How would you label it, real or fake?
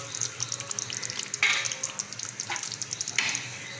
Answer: real